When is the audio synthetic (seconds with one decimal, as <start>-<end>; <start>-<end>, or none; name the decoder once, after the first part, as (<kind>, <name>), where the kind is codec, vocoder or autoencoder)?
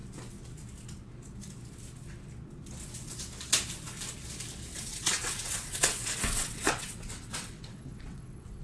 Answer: 4.7-8.6 (vocoder, WaveNeXt)